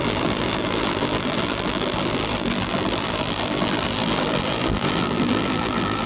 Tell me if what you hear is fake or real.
fake